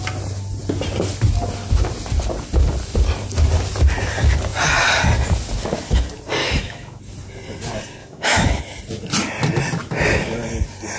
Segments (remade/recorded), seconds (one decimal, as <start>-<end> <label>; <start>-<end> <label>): 0.0-6.4 recorded; 6.4-7.0 remade; 7.0-8.0 recorded; 8.0-8.6 remade; 8.6-11.0 recorded